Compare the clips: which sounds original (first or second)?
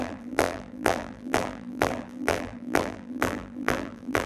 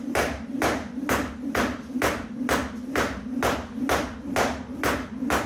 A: second